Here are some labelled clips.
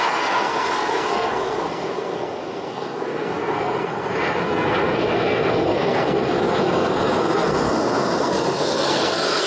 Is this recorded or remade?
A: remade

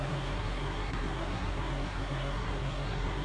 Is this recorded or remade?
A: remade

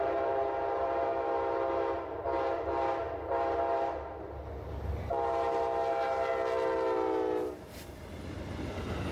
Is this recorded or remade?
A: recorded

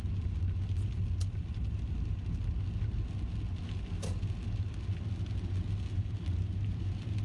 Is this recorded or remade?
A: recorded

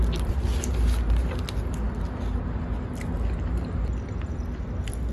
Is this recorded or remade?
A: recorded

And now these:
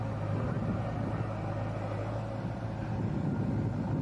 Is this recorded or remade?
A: recorded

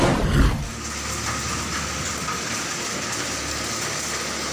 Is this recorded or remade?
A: recorded